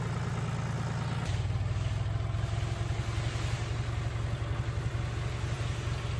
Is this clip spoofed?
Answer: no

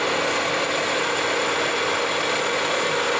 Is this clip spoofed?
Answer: no